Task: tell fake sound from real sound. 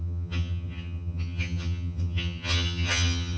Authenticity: fake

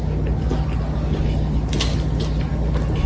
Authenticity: real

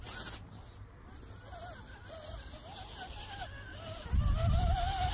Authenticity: real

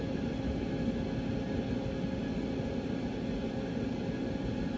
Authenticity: real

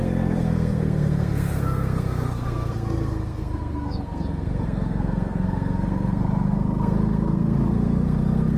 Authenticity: fake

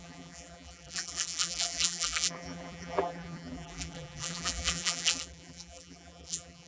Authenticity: fake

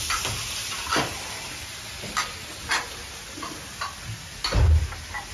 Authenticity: real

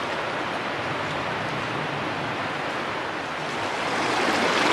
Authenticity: real